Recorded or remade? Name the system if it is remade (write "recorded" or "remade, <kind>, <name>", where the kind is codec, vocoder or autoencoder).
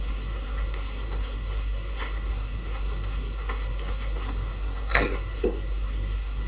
remade, codec, SNAC